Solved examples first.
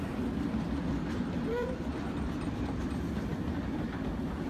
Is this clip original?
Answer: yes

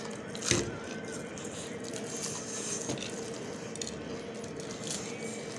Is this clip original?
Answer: yes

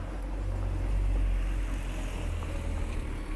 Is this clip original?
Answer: yes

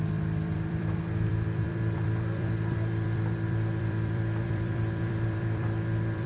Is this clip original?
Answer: no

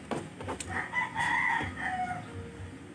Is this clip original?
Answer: yes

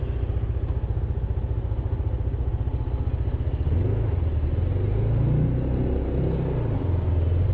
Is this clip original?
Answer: yes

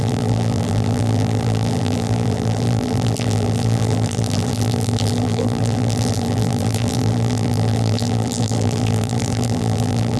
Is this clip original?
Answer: no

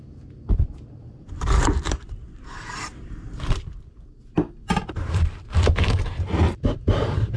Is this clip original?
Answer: no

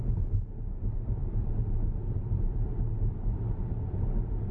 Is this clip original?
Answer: yes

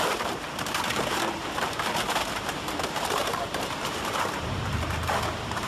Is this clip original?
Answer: no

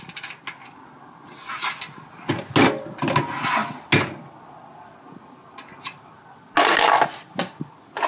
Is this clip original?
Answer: yes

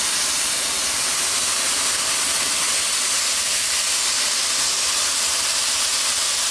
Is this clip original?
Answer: yes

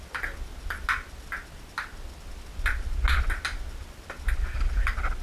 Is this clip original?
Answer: yes